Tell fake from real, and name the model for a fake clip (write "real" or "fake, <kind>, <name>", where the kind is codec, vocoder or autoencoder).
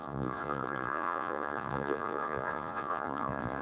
fake, vocoder, Vocos